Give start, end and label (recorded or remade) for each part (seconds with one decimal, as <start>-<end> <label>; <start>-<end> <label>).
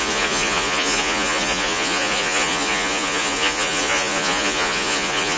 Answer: 0.0-5.4 remade